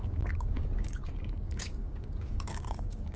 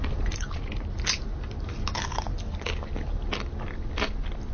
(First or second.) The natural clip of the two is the second